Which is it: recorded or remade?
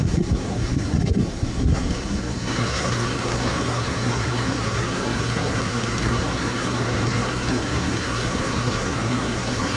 remade